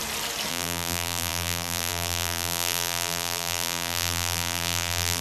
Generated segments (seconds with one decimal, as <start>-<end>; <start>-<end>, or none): 0.5-5.2

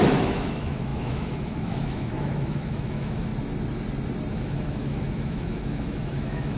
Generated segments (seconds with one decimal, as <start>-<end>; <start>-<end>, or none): 0.0-3.3; 4.3-6.6